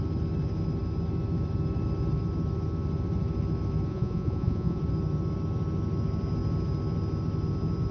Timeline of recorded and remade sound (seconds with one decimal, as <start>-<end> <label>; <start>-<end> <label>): 0.0-3.9 recorded; 3.9-4.8 remade; 4.8-7.9 recorded